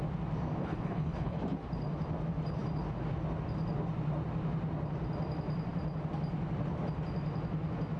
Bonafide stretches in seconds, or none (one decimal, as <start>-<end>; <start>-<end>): 0.0-0.6; 1.4-8.0